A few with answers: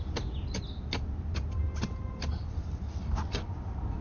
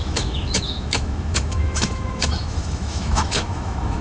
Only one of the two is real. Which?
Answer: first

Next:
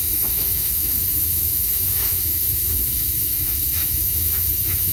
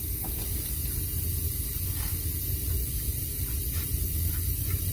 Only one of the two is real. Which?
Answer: second